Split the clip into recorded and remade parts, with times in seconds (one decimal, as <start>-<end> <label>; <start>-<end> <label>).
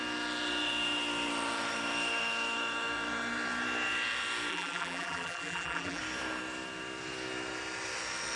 0.0-4.5 recorded; 4.5-6.0 remade; 6.0-8.4 recorded